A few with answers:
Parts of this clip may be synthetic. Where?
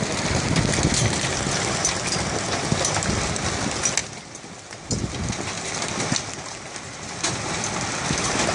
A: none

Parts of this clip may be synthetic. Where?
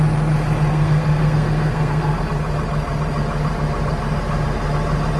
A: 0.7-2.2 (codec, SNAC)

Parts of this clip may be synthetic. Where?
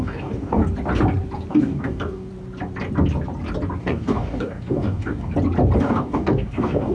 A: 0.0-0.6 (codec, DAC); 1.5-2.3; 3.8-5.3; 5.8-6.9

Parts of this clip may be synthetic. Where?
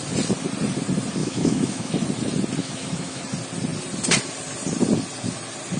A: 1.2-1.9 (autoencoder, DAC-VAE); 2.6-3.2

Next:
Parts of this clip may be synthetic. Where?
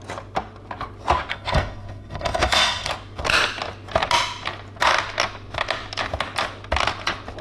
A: 1.3-2.9 (codec, SNAC)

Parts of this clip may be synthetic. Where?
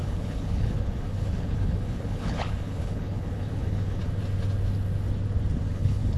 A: 0.0-4.0 (codec, HILCodec); 5.7-6.2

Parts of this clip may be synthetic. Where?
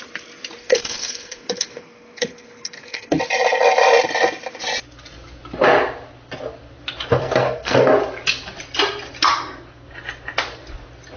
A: 0.6-3.2 (codec, SNAC); 7.2-7.9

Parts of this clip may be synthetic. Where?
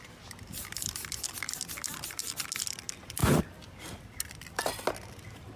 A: 3.2-4.9 (vocoder, BigVGAN v2)